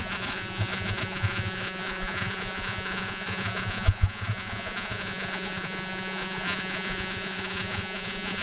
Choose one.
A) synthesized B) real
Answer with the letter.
A